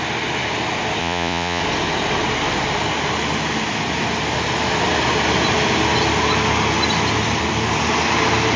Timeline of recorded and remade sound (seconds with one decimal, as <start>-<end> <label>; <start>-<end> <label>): 0.0-1.0 recorded; 1.0-1.6 remade; 1.6-8.6 recorded

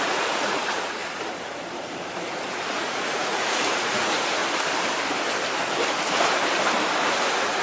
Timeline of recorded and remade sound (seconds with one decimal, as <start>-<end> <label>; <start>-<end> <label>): 0.0-1.0 remade; 1.0-2.5 recorded; 2.5-4.4 remade; 4.4-7.0 recorded; 7.0-7.6 remade

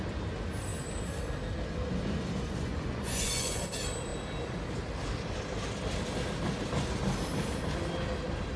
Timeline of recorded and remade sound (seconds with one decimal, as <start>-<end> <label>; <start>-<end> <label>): 0.0-2.6 recorded; 2.6-3.6 remade; 3.6-8.6 recorded

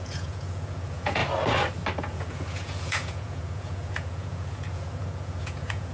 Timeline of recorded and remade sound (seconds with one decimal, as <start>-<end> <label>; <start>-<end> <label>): 0.0-1.2 remade; 1.2-2.0 recorded; 2.0-5.9 remade

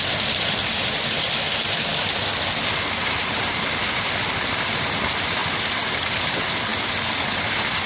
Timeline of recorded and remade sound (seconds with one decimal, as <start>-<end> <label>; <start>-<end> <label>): 0.0-7.9 recorded

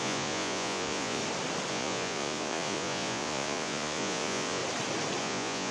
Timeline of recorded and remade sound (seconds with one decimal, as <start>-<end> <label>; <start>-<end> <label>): 0.0-1.2 remade; 1.2-1.7 recorded; 1.7-4.6 remade; 4.6-5.2 recorded; 5.2-5.7 remade